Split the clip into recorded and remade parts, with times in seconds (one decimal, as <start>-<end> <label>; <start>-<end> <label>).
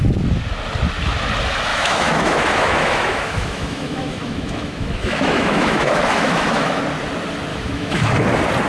0.0-1.7 recorded; 1.7-6.8 remade; 6.8-7.5 recorded; 7.5-8.0 remade; 8.0-8.7 recorded